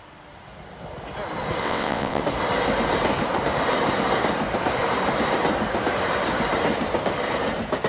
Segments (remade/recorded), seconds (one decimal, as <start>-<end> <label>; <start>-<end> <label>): 0.0-1.6 recorded; 1.6-2.2 remade; 2.2-7.9 recorded